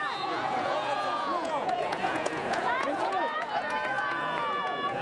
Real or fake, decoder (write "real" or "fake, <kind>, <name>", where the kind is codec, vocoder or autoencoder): fake, vocoder, Vocos